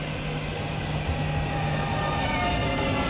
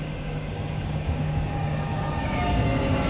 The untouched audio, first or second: first